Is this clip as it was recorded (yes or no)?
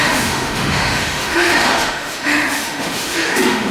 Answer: no